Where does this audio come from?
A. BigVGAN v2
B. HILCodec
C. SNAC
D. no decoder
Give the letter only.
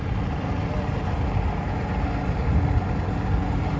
D